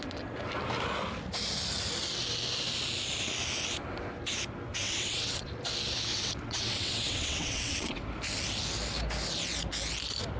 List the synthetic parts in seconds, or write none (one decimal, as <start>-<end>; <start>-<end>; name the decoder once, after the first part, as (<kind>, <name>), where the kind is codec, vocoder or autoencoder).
4.7-5.5 (vocoder, WaveNeXt); 6.1-8.0